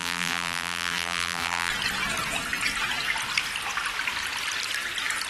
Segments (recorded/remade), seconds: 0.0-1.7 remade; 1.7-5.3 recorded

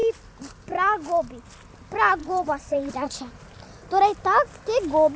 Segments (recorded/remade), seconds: 0.0-2.2 recorded; 2.2-3.1 remade; 3.1-5.2 recorded

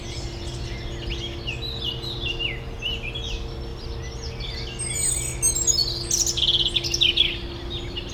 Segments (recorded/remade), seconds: 0.0-8.1 recorded

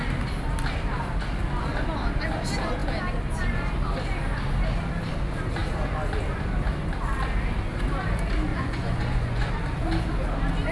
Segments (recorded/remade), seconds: 0.0-8.5 recorded; 8.5-9.5 remade; 9.5-10.7 recorded

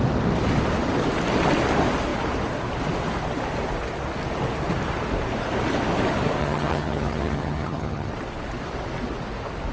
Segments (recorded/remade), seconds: 0.0-6.4 recorded; 6.4-8.1 remade; 8.1-9.7 recorded

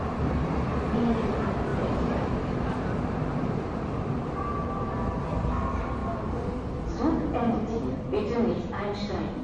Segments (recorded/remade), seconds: 0.0-6.0 remade; 6.0-7.5 recorded; 7.5-9.4 remade

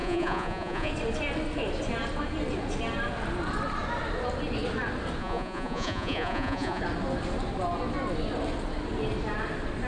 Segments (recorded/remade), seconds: 0.0-0.9 remade; 0.9-5.2 recorded; 5.2-6.8 remade; 6.8-9.9 recorded